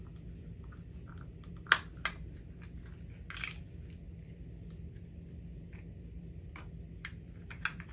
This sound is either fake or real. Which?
real